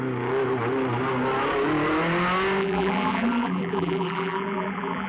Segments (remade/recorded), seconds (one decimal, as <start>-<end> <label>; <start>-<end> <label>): 0.0-2.6 recorded; 2.6-5.1 remade